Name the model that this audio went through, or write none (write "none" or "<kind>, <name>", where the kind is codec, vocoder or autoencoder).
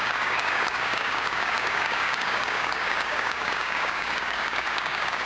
codec, DAC